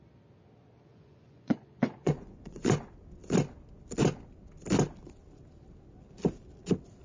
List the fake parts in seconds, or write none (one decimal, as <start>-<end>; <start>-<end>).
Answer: 0.9-2.8